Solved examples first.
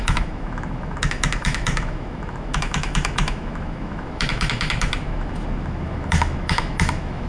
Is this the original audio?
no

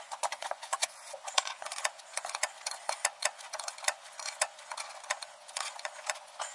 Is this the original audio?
no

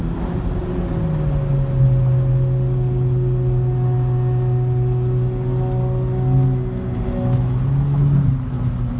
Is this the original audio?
yes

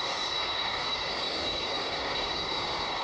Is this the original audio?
no